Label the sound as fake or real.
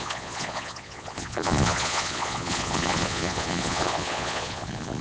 fake